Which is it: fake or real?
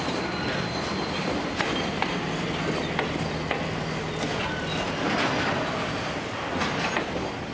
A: real